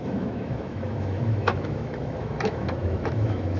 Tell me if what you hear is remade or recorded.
remade